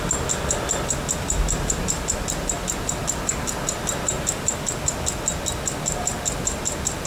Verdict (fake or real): real